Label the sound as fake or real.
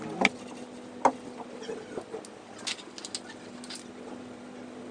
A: real